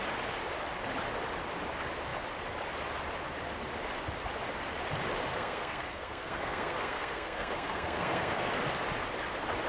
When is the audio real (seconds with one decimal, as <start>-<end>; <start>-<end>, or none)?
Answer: 0.0-5.3; 8.5-9.7